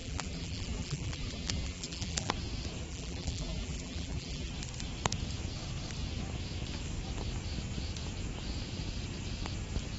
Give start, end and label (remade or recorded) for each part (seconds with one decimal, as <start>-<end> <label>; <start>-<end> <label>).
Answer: 0.0-2.3 remade; 2.3-2.9 recorded; 2.9-4.5 remade; 4.5-10.0 recorded